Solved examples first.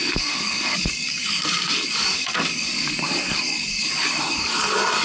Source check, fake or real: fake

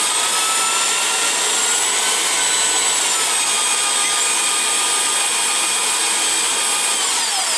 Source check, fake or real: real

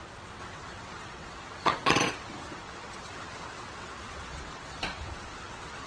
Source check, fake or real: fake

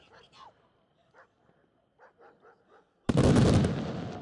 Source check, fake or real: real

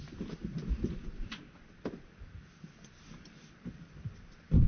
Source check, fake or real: fake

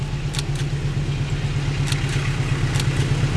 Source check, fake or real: real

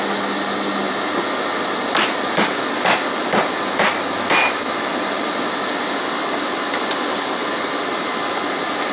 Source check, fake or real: real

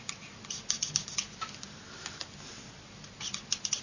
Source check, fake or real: real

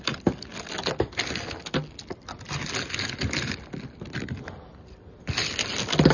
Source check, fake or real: real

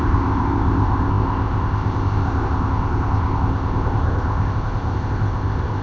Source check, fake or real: fake